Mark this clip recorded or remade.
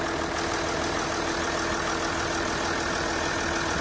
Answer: recorded